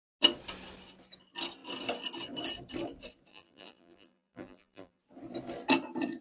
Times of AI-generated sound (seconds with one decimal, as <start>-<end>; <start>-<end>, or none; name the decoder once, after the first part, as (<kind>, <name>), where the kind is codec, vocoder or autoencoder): 3.3-5.0 (vocoder, BigVGAN v2)